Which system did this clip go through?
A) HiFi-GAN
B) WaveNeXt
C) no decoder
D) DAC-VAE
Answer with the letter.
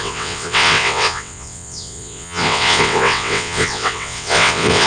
B